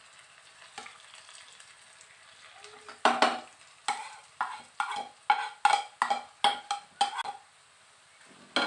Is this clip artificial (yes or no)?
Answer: no